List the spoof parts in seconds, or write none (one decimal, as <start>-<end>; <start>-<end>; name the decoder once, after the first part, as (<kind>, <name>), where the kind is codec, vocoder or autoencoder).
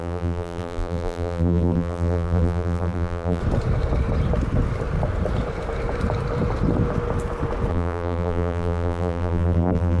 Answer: 0.0-3.4 (vocoder, BigVGAN v2); 7.7-10.0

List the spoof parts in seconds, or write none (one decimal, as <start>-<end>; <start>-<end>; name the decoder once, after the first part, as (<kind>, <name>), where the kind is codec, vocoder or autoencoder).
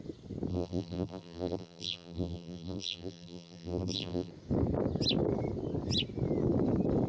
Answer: 0.5-4.3 (vocoder, BigVGAN v2)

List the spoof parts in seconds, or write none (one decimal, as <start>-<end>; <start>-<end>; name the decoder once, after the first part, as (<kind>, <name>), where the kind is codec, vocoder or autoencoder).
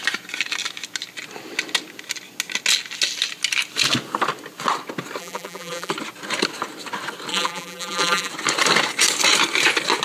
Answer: 5.2-5.9 (vocoder, BigVGAN v2); 7.3-8.3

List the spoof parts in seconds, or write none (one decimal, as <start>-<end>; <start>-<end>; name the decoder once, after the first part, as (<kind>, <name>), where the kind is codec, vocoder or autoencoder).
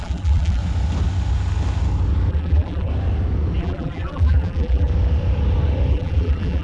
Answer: 0.0-0.6 (vocoder, BigVGAN v2); 2.3-2.9; 3.6-4.9; 5.9-6.6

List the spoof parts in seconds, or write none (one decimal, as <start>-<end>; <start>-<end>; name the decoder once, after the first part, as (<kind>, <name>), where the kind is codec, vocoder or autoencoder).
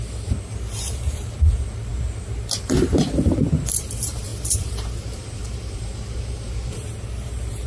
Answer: 0.0-7.7 (vocoder, BigVGAN v2)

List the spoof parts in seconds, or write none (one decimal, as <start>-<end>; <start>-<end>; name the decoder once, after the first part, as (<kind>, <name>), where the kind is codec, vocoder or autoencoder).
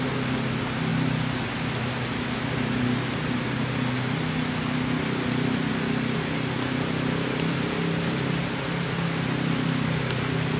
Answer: none